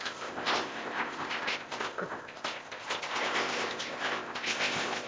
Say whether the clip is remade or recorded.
remade